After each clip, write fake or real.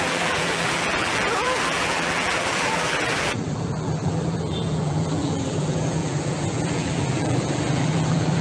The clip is fake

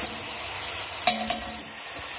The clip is real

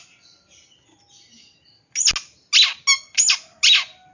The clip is real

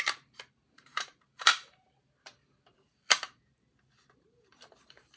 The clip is fake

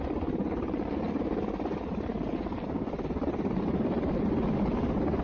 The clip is fake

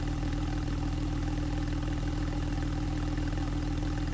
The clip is fake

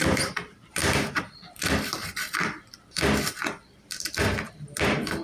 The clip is fake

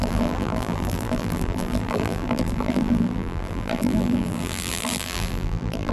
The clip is fake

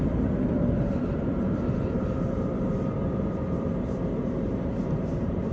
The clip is fake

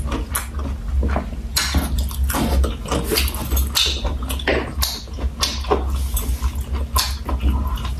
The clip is real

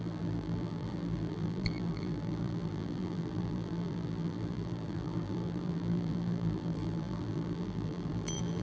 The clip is fake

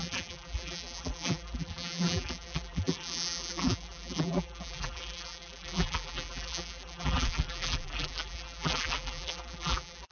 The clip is fake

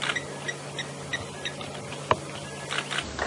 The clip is real